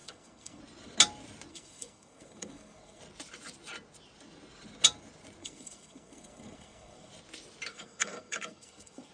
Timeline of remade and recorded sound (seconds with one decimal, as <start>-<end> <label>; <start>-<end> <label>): 0.0-0.6 remade; 0.6-1.5 recorded; 1.5-3.0 remade; 3.0-5.4 recorded; 5.4-7.1 remade; 7.1-7.7 recorded; 7.7-9.1 remade